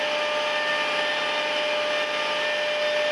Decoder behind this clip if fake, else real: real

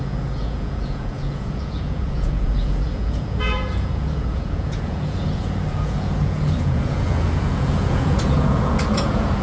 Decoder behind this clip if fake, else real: fake, vocoder, Vocos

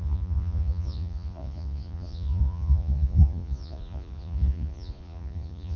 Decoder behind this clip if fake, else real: fake, vocoder, Vocos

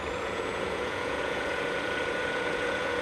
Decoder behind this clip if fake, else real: fake, vocoder, Vocos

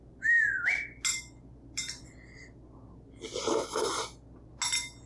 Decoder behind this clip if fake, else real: real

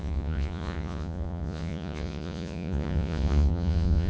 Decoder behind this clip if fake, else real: fake, vocoder, Vocos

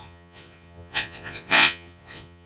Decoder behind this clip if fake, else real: fake, vocoder, Vocos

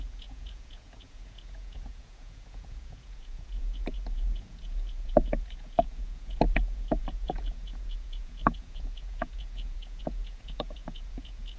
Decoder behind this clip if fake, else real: fake, vocoder, Vocos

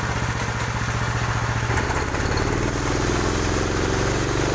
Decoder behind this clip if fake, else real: real